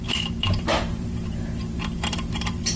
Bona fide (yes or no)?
no